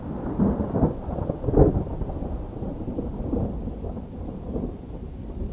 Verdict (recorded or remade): recorded